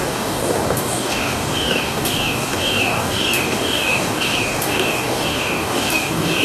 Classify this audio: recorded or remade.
remade